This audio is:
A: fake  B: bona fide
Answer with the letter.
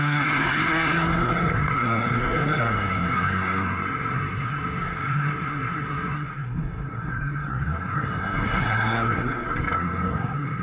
A